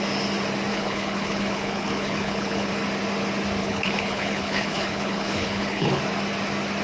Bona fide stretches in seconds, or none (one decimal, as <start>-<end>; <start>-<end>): 0.0-0.7; 2.7-3.6; 6.0-6.8